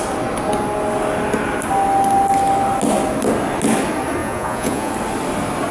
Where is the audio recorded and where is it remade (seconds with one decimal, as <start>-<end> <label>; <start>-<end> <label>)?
0.0-4.2 recorded; 4.2-4.9 remade; 4.9-5.7 recorded